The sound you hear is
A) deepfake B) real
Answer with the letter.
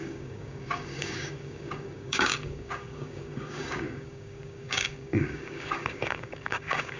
A